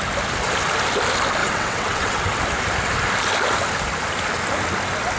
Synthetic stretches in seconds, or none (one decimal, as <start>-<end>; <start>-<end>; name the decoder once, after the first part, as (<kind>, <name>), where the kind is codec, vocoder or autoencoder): 1.4-2.3 (vocoder, WaveNeXt)